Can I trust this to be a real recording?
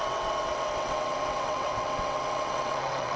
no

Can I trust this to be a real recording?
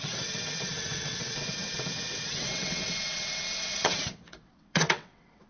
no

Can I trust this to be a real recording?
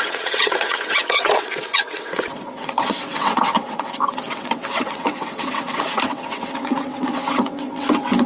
no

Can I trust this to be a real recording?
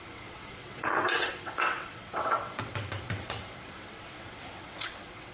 no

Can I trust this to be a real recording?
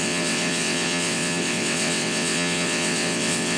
no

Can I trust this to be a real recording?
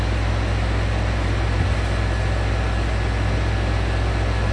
yes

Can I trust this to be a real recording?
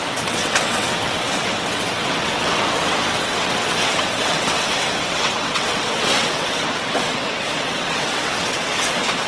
no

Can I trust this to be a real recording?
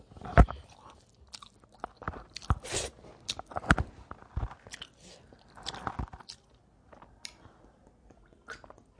yes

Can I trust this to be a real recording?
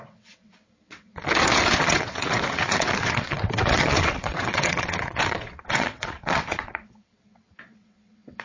no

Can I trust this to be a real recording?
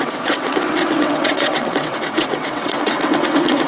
no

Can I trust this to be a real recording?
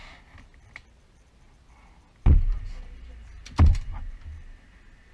yes